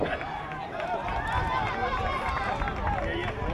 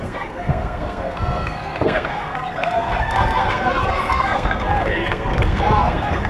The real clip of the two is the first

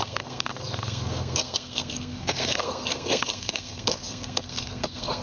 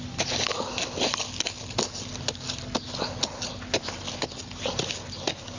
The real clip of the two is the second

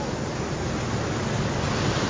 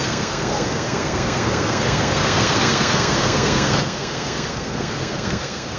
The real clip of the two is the first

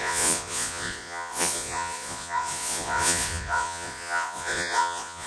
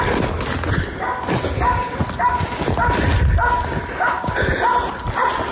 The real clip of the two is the second